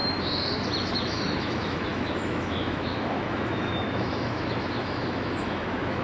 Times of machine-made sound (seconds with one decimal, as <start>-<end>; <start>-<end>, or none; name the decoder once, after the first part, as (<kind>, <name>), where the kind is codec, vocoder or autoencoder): 0.8-6.0 (autoencoder, DAC-VAE)